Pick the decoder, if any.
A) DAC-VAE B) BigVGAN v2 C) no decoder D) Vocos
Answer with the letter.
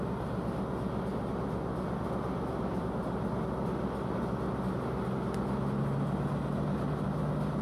C